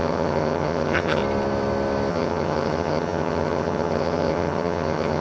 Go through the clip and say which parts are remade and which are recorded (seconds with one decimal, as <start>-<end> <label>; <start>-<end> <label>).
0.0-1.2 remade; 1.2-2.1 recorded; 2.1-5.2 remade